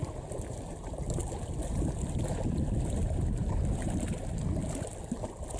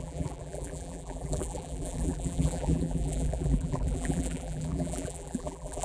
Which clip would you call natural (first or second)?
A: first